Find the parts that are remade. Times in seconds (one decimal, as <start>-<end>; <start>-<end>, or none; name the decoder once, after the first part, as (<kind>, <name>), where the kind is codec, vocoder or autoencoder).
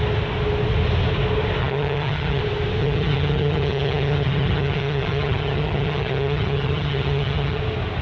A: 1.6-2.4 (vocoder, HiFi-GAN); 2.8-7.6